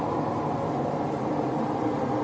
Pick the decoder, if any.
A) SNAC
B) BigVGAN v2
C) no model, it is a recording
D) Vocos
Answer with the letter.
B